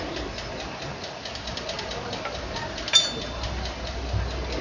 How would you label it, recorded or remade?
recorded